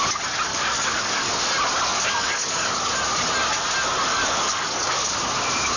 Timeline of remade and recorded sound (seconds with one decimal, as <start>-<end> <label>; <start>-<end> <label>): 0.0-0.5 recorded; 0.5-1.3 remade; 1.3-1.9 recorded; 1.9-2.9 remade; 2.9-4.1 recorded; 4.1-5.1 remade; 5.1-5.8 recorded